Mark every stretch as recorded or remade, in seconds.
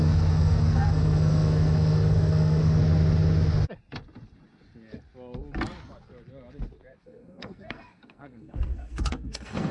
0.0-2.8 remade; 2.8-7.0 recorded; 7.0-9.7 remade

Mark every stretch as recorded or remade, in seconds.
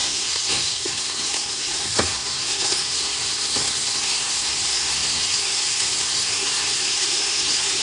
0.0-7.8 remade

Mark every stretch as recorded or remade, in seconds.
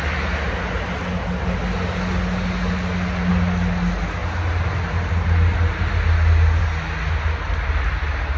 0.0-8.4 recorded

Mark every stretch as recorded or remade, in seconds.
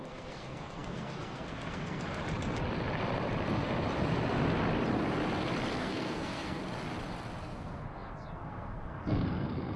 0.0-2.2 remade; 2.2-5.8 recorded; 5.8-6.6 remade; 6.6-7.4 recorded; 7.4-9.8 remade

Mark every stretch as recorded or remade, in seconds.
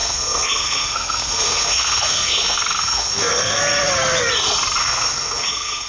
0.0-3.6 remade; 3.6-4.8 recorded; 4.8-5.9 remade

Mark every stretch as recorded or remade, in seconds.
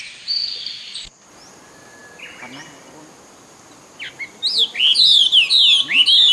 0.0-6.3 recorded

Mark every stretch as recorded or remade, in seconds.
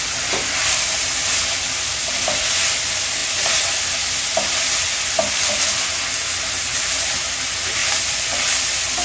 0.0-9.0 recorded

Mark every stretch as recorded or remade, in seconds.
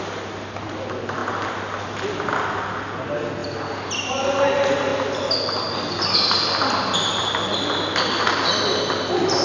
0.0-9.4 recorded